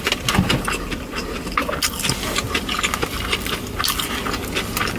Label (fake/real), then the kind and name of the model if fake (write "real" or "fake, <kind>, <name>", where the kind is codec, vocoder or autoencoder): real